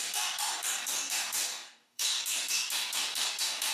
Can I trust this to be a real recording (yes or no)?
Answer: no